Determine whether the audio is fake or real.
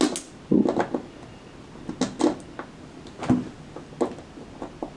real